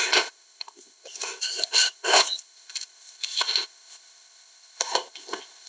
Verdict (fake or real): fake